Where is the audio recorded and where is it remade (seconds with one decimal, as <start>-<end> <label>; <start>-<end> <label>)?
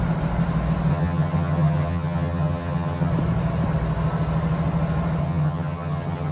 0.0-0.9 recorded; 0.9-3.1 remade; 3.1-5.2 recorded; 5.2-6.3 remade